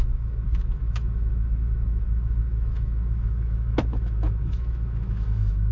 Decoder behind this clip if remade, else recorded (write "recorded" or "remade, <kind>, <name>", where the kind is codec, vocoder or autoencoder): remade, autoencoder, DAC-VAE